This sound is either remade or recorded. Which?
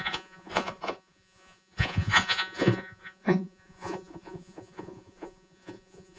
remade